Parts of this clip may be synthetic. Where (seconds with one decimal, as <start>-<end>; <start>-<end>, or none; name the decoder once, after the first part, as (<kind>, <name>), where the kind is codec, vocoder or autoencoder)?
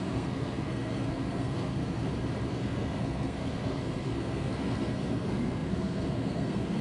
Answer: 0.0-2.0 (codec, SNAC); 2.5-6.8